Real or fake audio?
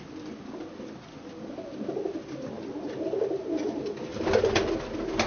real